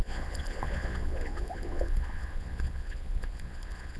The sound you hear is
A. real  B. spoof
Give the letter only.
B